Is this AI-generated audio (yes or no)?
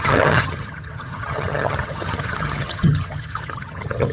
yes